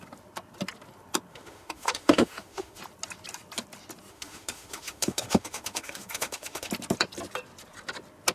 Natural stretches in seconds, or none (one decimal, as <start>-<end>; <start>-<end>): 0.0-1.3; 2.8-4.1; 6.7-8.3